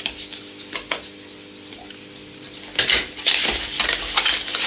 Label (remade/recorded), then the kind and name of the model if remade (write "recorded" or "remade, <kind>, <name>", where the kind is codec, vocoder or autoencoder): recorded